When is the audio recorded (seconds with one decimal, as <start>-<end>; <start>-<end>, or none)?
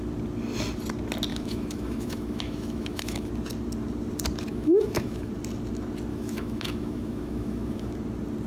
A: 0.0-1.3; 3.3-4.5; 5.3-6.1; 7.9-8.5